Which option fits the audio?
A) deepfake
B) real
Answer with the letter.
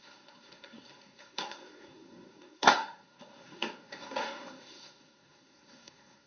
A